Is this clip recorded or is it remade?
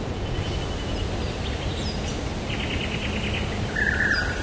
recorded